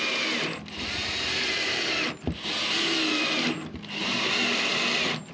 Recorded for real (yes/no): yes